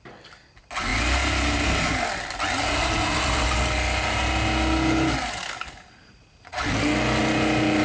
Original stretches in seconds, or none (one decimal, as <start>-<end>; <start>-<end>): 0.0-6.0; 6.6-7.8